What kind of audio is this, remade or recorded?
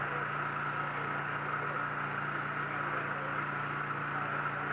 recorded